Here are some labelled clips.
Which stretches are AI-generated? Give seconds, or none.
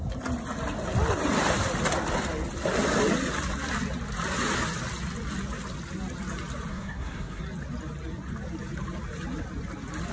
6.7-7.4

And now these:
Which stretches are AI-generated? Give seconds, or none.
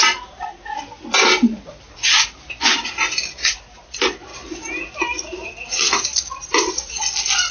1.4-2.9; 4.3-6.7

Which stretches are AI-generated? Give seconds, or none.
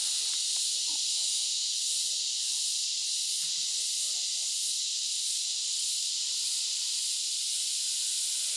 1.1-1.7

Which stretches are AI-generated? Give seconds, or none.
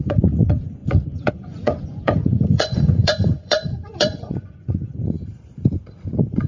0.0-5.3; 6.0-6.5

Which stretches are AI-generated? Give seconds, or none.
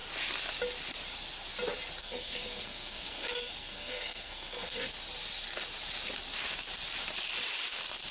2.0-4.9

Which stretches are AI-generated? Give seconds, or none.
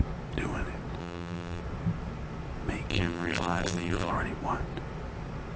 1.0-1.6; 2.9-4.1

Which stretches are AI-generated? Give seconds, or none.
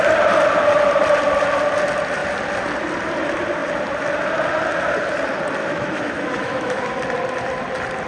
5.6-7.0